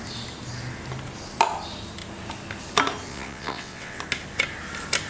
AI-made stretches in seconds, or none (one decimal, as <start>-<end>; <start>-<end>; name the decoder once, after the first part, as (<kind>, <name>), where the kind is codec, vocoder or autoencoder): 3.1-4.0 (vocoder, WaveNeXt)